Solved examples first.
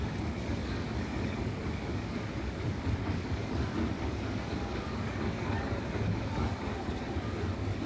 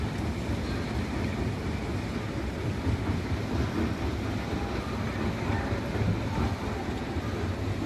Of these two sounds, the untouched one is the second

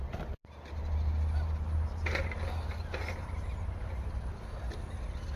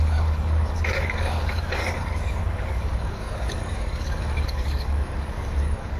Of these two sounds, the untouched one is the first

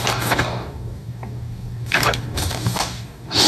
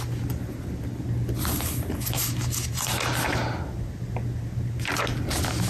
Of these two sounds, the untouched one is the second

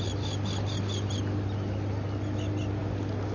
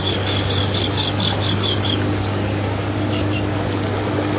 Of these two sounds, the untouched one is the first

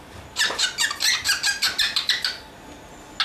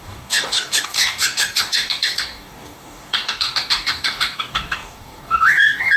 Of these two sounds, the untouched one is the first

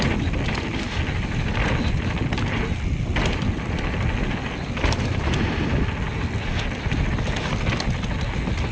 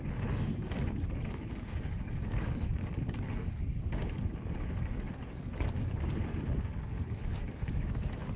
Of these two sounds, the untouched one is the first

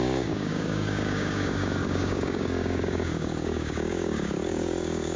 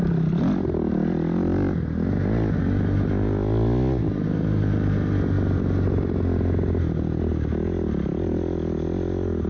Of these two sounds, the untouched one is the second